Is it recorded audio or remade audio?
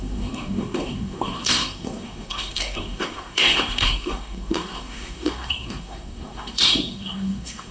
remade